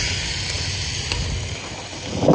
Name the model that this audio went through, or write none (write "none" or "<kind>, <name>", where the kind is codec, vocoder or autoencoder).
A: none